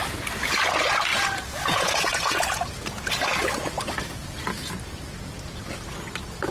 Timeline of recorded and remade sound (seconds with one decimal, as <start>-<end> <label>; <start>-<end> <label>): 0.0-1.1 recorded; 1.1-3.2 remade; 3.2-6.5 recorded